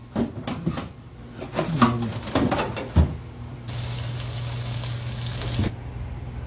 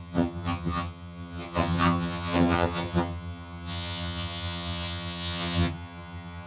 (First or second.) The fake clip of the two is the second